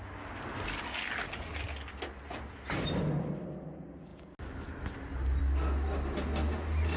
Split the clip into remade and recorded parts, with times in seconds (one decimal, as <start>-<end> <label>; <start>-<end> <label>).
0.0-7.0 recorded